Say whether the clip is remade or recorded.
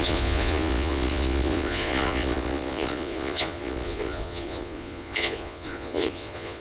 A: remade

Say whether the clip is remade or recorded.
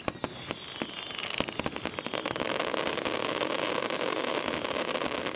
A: recorded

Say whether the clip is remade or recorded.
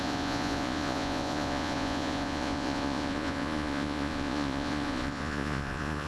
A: remade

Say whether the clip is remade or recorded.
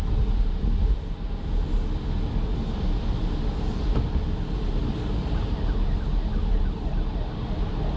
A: recorded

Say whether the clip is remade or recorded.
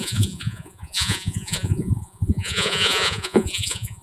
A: remade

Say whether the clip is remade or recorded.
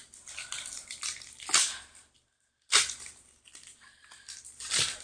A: recorded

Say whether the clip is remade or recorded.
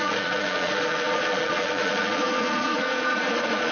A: remade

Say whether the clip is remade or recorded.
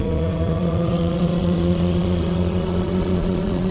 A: remade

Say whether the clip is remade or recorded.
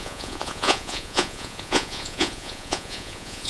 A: remade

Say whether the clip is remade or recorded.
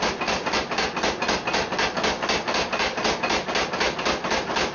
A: recorded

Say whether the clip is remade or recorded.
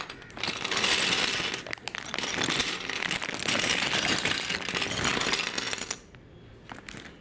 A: recorded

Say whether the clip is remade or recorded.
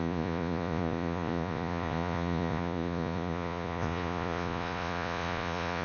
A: remade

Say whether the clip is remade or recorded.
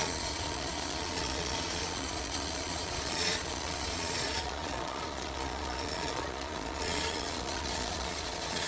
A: remade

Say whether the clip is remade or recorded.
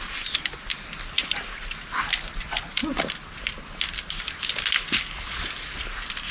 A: recorded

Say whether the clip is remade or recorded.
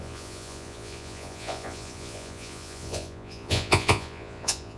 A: remade